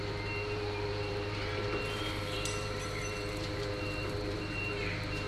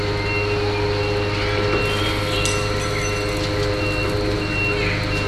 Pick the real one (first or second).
second